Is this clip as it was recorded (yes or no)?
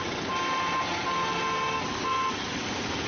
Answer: yes